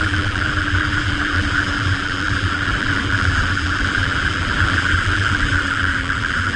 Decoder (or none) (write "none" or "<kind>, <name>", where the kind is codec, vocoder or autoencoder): vocoder, BigVGAN v2